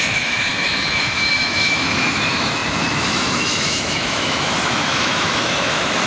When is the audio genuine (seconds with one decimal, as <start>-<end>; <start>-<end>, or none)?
none